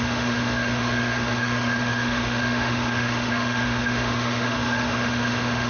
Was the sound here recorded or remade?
remade